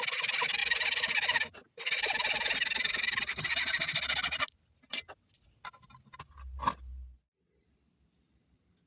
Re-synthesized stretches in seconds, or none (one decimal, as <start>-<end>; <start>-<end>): none